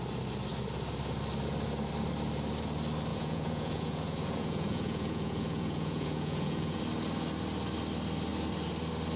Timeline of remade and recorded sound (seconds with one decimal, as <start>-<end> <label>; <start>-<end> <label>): 0.0-3.1 recorded; 3.1-6.8 remade; 6.8-9.2 recorded